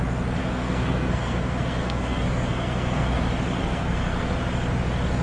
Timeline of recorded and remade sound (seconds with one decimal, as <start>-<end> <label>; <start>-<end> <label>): 0.0-0.4 recorded; 0.4-3.2 remade; 3.2-3.6 recorded; 3.6-4.3 remade; 4.3-5.2 recorded

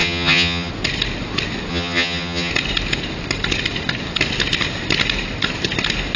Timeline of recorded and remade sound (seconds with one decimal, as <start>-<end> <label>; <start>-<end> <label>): 0.0-0.7 remade; 0.7-1.7 recorded; 1.7-2.5 remade; 2.5-6.2 recorded

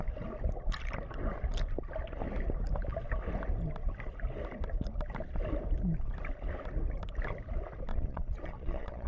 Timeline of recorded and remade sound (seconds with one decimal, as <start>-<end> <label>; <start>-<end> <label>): 0.0-7.9 recorded; 7.9-9.1 remade

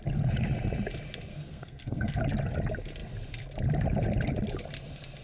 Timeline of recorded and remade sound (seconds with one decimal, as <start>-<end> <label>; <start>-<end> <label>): 0.0-1.3 recorded; 1.3-2.2 remade; 2.2-5.2 recorded

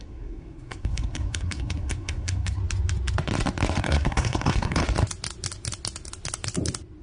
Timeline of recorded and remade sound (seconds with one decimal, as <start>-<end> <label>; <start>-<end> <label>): 0.0-2.6 remade; 2.6-3.8 recorded; 3.8-4.8 remade; 4.8-7.0 recorded

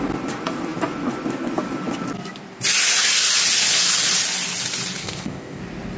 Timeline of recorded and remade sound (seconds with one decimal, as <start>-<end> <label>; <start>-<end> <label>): 0.0-5.0 recorded; 5.0-5.6 remade; 5.6-6.0 recorded

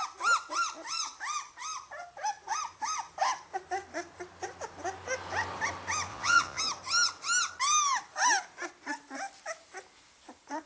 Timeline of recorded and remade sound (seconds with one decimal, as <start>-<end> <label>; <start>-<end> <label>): 0.0-6.1 recorded; 6.1-6.6 remade; 6.6-10.7 recorded